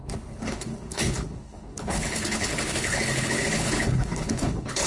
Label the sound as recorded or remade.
remade